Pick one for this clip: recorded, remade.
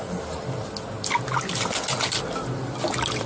recorded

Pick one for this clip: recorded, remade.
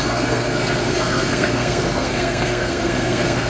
remade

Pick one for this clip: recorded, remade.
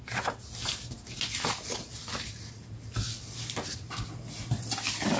recorded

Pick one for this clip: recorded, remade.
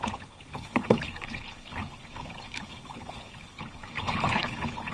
remade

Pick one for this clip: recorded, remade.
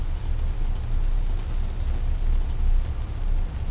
recorded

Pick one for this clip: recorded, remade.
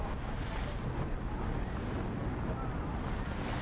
recorded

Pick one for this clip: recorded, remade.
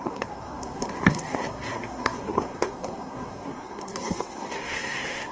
remade